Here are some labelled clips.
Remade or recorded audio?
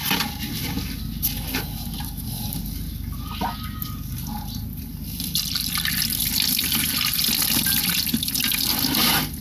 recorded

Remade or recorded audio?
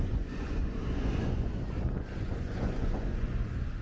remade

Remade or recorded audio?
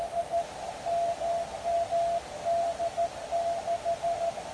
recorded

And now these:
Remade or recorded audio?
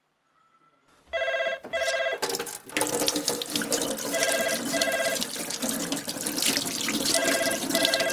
recorded